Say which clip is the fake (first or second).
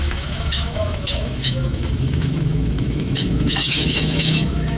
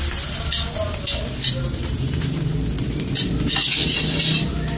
first